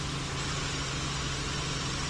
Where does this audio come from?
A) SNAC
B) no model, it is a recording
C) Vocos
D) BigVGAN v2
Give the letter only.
B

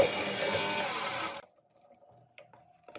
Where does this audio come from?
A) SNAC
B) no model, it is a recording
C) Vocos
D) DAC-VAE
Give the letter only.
B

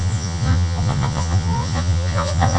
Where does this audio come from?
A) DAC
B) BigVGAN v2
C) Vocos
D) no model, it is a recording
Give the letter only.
C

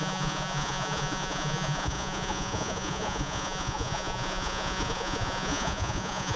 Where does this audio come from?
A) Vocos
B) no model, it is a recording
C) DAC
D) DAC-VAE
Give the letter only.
A